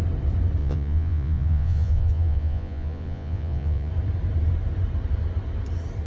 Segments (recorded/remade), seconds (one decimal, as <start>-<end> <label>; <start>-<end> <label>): 0.0-0.6 recorded; 0.6-3.9 remade; 3.9-6.1 recorded

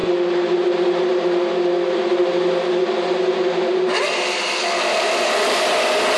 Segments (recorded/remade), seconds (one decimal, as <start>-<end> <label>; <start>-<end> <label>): 0.0-6.2 recorded

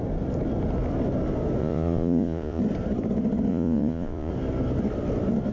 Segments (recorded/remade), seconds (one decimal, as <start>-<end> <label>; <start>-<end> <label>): 0.0-1.6 recorded; 1.6-2.6 remade; 2.6-3.5 recorded; 3.5-4.3 remade; 4.3-5.5 recorded